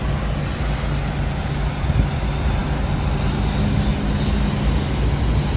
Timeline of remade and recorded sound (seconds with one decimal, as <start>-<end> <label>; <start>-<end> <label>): 0.0-5.6 recorded